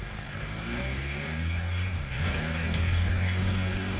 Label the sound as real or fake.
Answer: fake